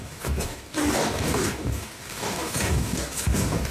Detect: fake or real fake